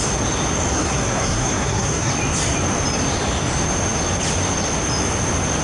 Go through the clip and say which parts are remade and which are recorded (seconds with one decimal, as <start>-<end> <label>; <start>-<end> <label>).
0.0-0.7 recorded; 0.7-2.1 remade; 2.1-5.6 recorded